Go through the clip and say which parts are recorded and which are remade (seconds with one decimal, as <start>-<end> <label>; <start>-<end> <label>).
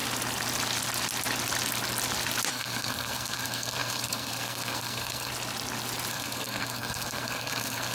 0.0-2.5 recorded; 2.5-5.3 remade; 5.3-6.1 recorded; 6.1-7.9 remade